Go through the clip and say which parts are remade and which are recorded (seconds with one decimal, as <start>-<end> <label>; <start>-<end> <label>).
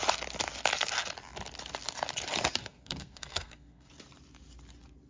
0.0-2.6 recorded; 2.6-3.9 remade; 3.9-5.1 recorded